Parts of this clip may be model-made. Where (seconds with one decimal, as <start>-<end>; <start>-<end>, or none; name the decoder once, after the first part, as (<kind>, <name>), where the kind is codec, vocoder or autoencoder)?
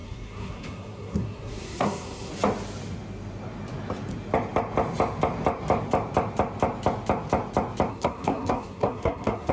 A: 0.0-2.3 (codec, SNAC); 7.9-9.5